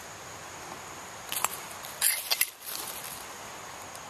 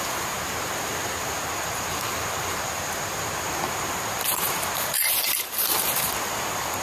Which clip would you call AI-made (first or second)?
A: second